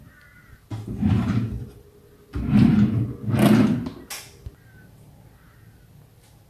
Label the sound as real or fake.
real